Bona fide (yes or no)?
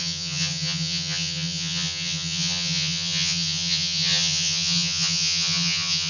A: no